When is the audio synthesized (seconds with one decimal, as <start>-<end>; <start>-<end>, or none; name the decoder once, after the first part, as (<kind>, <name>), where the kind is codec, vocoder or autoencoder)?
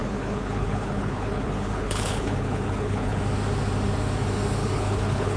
0.0-3.2 (codec, HILCodec); 4.6-5.4